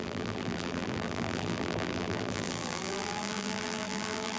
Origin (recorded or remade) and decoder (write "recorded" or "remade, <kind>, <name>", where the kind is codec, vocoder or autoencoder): remade, vocoder, BigVGAN v2